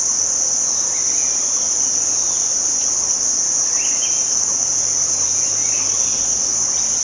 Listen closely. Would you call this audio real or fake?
real